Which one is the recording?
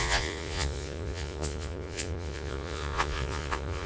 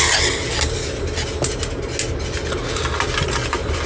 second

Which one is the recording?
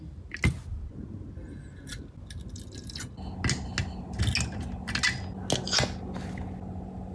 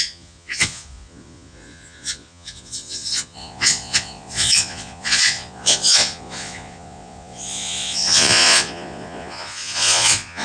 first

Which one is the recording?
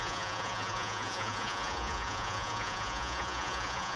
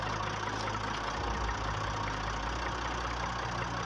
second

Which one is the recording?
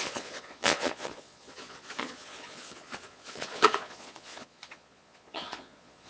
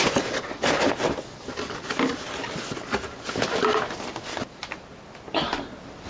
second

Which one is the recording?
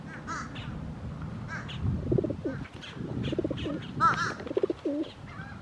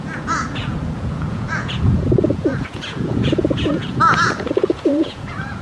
first